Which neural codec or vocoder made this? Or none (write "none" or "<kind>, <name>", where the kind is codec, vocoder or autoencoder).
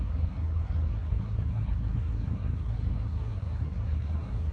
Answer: codec, SNAC